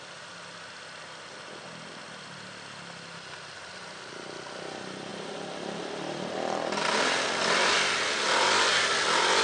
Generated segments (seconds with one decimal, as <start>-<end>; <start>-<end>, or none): 5.1-8.9